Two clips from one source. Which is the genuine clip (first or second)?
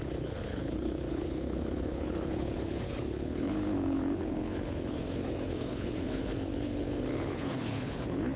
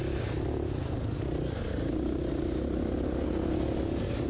second